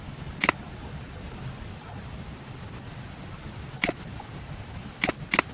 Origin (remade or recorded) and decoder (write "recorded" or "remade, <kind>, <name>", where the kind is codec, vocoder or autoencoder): recorded